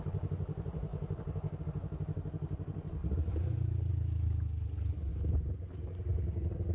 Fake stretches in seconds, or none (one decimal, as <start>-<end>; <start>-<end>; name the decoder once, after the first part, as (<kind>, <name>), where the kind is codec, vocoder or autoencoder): 5.1-5.7 (codec, DAC)